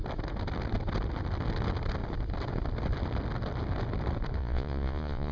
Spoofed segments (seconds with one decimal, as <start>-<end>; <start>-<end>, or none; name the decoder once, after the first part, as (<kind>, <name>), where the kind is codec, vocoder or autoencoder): 4.4-5.3 (vocoder, Vocos)